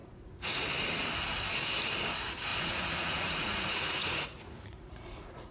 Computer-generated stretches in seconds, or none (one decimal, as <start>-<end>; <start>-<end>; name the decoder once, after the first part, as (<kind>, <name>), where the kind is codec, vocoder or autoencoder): 0.0-0.7 (vocoder, Vocos); 2.5-5.5